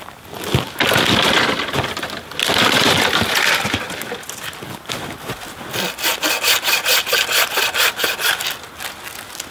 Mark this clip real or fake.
real